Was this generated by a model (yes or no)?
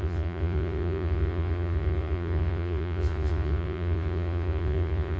yes